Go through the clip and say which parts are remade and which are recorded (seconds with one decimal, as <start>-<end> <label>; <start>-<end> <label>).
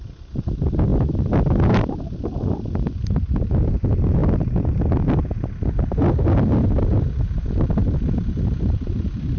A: 0.0-9.4 recorded